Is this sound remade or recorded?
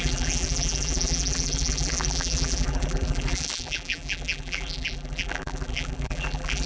remade